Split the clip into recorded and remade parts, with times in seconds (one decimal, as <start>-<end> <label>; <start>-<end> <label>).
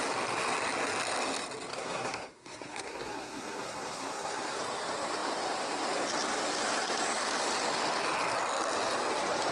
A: 0.0-1.7 recorded; 1.7-4.6 remade; 4.6-9.5 recorded